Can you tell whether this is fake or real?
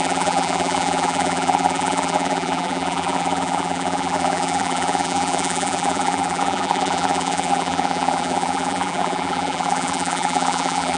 fake